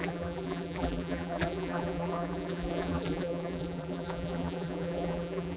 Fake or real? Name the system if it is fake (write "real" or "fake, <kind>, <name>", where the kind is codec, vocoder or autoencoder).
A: fake, vocoder, BigVGAN v2